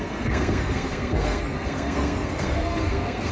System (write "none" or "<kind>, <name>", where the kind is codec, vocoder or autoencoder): codec, SNAC